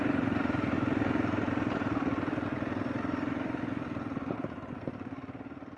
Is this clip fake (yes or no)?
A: yes